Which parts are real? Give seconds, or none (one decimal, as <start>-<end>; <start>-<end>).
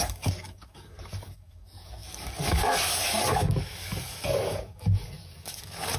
none